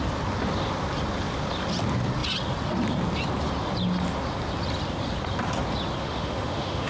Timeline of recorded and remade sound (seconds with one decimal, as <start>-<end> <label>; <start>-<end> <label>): 0.0-6.0 recorded; 6.0-6.9 remade

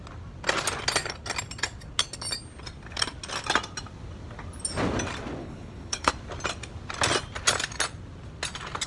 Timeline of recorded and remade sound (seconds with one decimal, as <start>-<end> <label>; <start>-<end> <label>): 0.0-5.4 recorded; 5.4-6.1 remade; 6.1-8.9 recorded

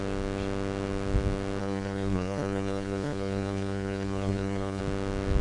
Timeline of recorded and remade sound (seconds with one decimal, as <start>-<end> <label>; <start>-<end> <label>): 0.0-1.6 recorded; 1.6-4.8 remade; 4.8-5.4 recorded

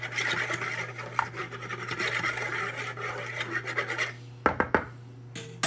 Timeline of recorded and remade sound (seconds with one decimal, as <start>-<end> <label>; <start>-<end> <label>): 0.0-5.7 recorded